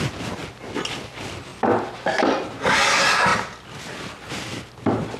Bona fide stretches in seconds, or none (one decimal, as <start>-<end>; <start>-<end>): 0.0-5.2